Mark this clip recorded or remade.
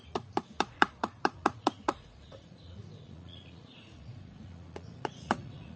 remade